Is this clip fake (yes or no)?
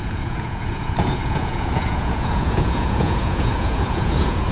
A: yes